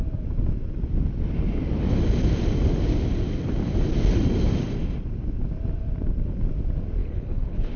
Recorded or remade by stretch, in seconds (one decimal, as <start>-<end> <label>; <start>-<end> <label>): 0.0-7.0 recorded; 7.0-7.8 remade